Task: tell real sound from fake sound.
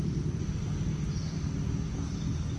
real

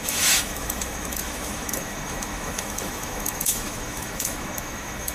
fake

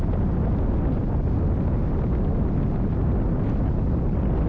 real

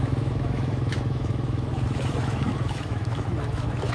fake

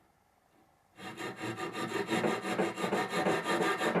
real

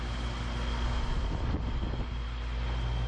real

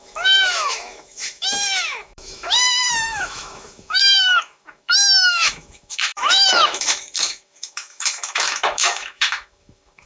fake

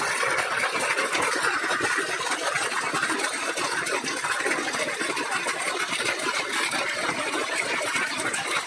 real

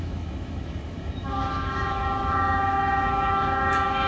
fake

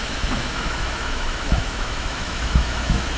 fake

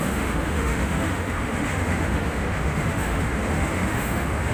fake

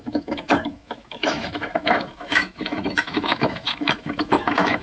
fake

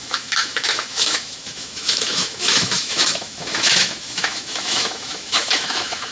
fake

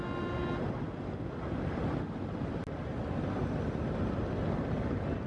real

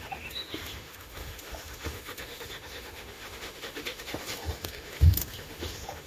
fake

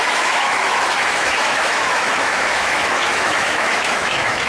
fake